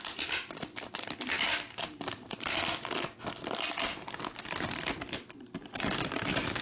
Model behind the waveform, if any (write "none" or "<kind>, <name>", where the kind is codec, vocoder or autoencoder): none